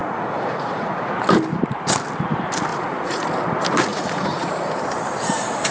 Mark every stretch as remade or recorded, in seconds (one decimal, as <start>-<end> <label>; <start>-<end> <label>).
0.0-1.1 remade; 1.1-2.7 recorded; 2.7-3.3 remade; 3.3-3.9 recorded; 3.9-4.7 remade; 4.7-5.7 recorded